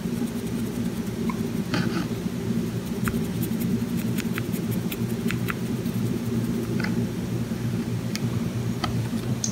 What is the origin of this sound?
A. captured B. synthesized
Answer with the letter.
B